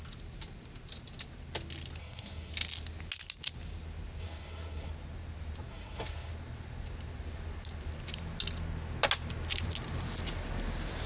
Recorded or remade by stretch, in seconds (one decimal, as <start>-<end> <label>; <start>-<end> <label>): 0.0-2.0 recorded; 2.0-2.5 remade; 2.5-4.2 recorded; 4.2-4.9 remade; 4.9-5.7 recorded; 5.7-6.3 remade; 6.3-11.1 recorded